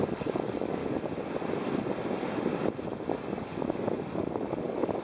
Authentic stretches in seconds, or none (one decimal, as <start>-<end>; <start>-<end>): 0.8-2.9